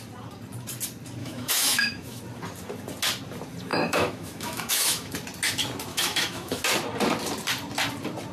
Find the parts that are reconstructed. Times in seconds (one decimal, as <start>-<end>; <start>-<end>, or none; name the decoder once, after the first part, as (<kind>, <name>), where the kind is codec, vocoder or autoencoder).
1.2-2.2 (autoencoder, DAC-VAE); 3.7-5.1; 5.9-6.6